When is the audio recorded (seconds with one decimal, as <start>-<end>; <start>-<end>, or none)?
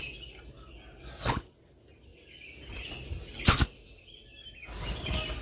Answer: 0.0-5.4